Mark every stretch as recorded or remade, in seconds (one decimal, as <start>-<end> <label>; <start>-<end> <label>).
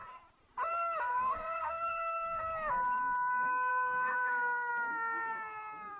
0.0-1.1 recorded; 1.1-2.4 remade; 2.4-3.7 recorded; 3.7-4.7 remade; 4.7-6.0 recorded